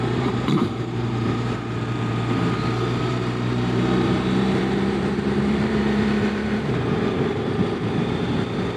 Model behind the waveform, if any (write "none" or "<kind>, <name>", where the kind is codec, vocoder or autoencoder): vocoder, BigVGAN v2